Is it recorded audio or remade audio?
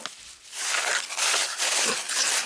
recorded